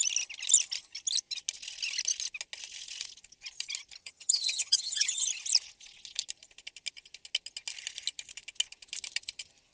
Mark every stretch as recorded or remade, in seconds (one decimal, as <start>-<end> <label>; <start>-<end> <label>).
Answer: 0.0-4.0 recorded; 4.0-5.3 remade; 5.3-9.7 recorded